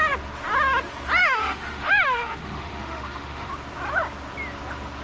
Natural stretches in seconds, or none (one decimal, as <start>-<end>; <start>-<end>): 0.0-1.2; 3.5-5.0